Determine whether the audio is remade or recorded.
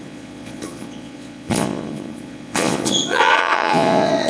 remade